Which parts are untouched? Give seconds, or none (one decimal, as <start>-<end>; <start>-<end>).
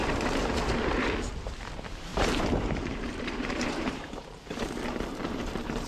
0.9-2.1; 4.6-5.1